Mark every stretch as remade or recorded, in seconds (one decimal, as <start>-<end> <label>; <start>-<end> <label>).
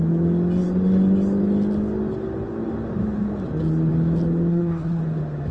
0.0-4.5 recorded; 4.5-5.0 remade; 5.0-5.5 recorded